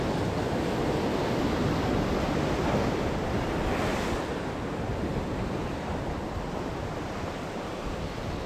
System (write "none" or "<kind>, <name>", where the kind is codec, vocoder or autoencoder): none